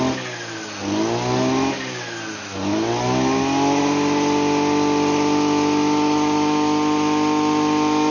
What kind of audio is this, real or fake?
real